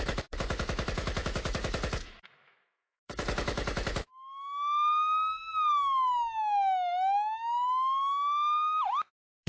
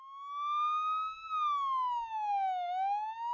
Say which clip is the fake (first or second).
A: first